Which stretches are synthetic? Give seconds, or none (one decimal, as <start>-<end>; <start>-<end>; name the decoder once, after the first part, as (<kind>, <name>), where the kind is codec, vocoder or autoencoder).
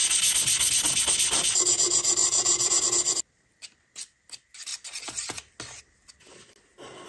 none